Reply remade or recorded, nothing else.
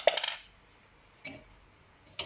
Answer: recorded